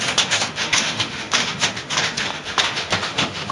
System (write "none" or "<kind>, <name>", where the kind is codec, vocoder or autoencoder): autoencoder, DAC-VAE